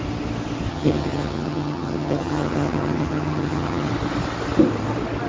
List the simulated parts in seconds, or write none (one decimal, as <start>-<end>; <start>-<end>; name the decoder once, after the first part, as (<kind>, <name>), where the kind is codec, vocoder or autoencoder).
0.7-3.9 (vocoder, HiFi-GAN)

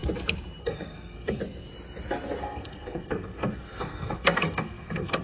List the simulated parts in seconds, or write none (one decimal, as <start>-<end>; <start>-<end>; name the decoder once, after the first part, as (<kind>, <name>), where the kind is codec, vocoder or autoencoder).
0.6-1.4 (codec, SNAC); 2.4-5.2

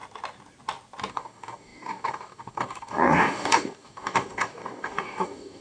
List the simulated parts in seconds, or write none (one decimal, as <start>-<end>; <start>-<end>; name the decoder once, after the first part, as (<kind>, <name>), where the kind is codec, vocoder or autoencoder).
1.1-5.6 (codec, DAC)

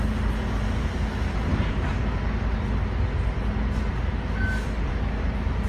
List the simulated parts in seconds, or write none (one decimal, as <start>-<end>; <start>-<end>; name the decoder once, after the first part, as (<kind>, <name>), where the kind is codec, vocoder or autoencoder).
none

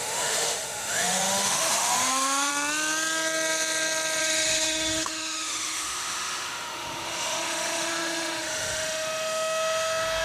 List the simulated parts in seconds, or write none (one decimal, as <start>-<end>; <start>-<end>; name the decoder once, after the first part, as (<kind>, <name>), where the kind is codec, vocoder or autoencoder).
0.0-2.5 (autoencoder, DAC-VAE); 4.2-10.2

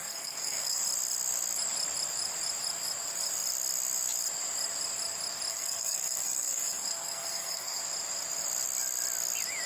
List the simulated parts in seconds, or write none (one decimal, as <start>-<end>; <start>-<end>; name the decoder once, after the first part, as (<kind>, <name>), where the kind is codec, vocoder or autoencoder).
0.0-0.8 (codec, SNAC); 5.5-7.8